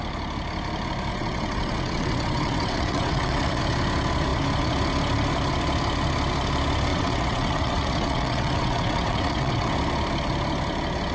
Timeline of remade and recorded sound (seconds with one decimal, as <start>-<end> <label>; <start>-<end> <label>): 0.0-1.1 recorded; 1.1-3.6 remade; 3.6-6.9 recorded; 6.9-9.7 remade; 9.7-11.1 recorded